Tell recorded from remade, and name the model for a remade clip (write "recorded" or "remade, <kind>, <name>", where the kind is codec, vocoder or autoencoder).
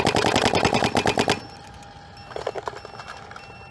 recorded